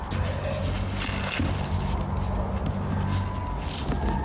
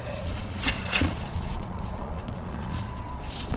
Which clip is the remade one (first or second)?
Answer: second